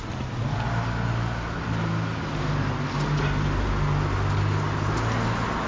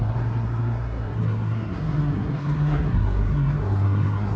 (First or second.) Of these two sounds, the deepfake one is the second